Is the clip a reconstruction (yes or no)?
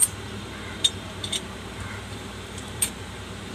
yes